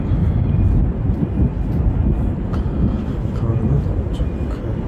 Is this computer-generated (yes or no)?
no